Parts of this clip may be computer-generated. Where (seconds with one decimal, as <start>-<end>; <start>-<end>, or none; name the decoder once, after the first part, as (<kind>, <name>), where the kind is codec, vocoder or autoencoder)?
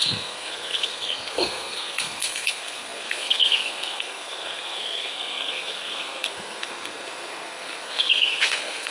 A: 0.0-8.9 (codec, SNAC)